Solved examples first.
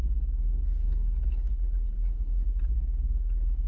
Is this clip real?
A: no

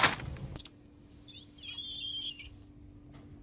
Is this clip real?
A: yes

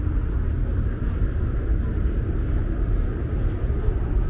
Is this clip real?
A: yes